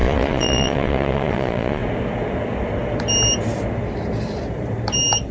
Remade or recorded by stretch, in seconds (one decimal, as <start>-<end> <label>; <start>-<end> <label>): 0.0-1.8 remade; 1.8-5.3 recorded